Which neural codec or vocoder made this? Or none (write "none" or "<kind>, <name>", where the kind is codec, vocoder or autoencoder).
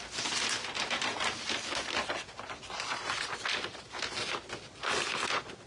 none